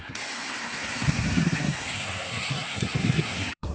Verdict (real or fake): fake